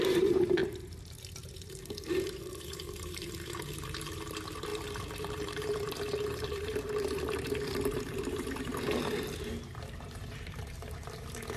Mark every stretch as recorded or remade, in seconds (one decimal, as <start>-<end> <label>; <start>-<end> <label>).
0.0-0.6 remade; 0.6-2.1 recorded; 2.1-11.6 remade